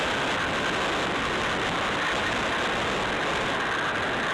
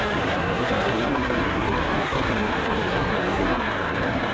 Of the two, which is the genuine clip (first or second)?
first